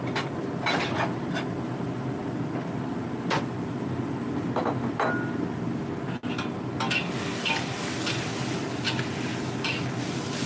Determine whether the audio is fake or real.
real